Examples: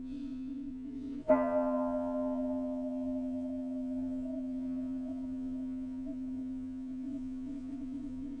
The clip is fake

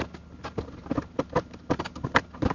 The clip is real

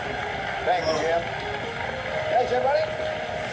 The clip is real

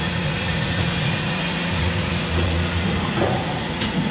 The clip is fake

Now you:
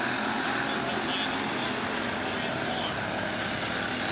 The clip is real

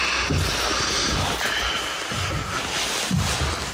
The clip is real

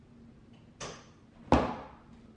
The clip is real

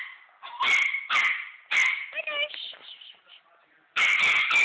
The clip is real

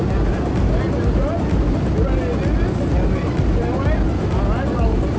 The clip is real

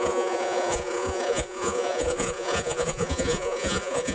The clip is fake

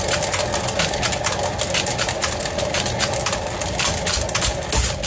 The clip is real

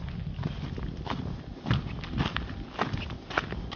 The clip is real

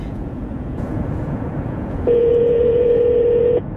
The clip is fake